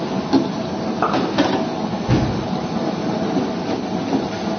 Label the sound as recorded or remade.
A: recorded